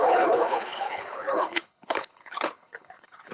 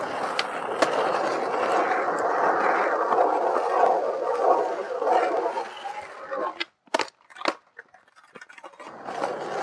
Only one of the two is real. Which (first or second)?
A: second